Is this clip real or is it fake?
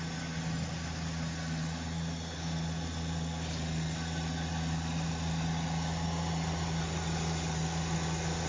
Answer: real